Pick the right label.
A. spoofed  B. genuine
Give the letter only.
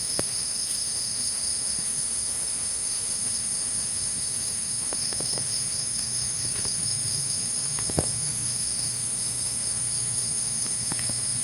A